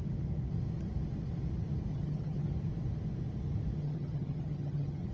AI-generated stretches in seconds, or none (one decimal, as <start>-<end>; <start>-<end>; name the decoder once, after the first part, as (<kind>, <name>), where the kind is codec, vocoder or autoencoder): 1.9-2.5 (vocoder, HiFi-GAN); 3.8-5.1